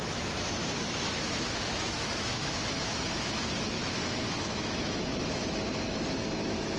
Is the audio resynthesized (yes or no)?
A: yes